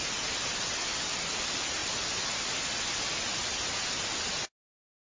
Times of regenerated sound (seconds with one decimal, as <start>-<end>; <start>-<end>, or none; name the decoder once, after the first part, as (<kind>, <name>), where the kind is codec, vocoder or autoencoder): none